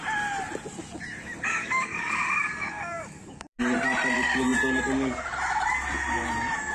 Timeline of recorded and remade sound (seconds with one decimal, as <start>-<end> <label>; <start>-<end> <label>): 0.0-1.6 recorded; 1.6-3.6 remade; 3.6-6.7 recorded